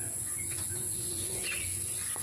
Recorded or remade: remade